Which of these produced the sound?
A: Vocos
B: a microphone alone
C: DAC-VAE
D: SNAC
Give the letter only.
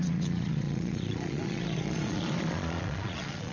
A